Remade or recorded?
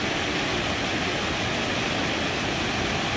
recorded